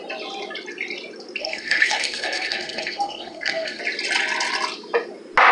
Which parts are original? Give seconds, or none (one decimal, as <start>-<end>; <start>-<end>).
0.0-1.4; 3.8-5.5